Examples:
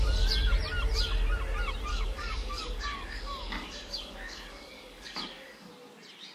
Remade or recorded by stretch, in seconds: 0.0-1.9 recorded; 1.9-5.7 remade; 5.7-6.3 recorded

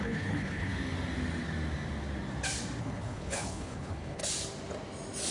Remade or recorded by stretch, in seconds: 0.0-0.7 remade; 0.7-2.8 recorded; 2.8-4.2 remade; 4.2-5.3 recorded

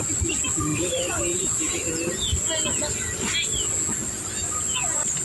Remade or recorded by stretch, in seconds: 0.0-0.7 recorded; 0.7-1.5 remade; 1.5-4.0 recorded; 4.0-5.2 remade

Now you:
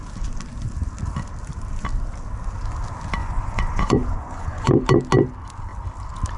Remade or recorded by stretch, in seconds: 0.0-3.2 recorded; 3.2-4.7 remade; 4.7-6.4 recorded